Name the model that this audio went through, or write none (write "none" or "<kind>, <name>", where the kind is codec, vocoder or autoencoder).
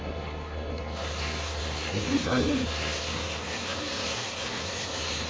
codec, SNAC